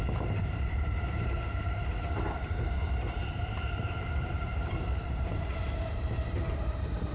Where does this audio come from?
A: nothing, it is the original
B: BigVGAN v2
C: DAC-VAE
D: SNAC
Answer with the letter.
B